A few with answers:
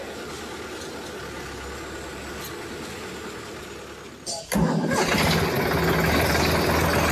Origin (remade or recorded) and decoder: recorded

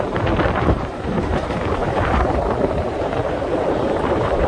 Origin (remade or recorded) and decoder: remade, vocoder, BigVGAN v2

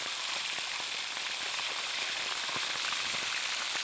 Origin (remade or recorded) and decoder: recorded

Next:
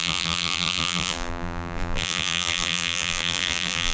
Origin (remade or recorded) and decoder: remade, vocoder, BigVGAN v2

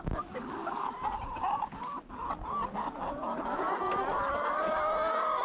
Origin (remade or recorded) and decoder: recorded